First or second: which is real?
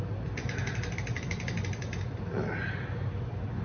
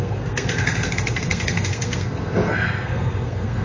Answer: first